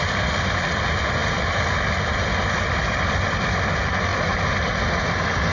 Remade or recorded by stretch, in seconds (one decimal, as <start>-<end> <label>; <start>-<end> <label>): 0.0-5.5 recorded